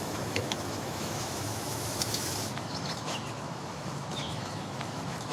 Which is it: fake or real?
fake